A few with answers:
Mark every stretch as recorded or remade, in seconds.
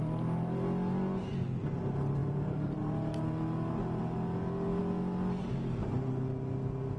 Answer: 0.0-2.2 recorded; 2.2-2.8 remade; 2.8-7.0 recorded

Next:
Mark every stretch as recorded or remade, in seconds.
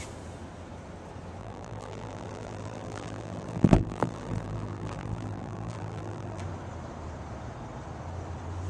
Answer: 0.0-1.4 recorded; 1.4-6.4 remade; 6.4-8.7 recorded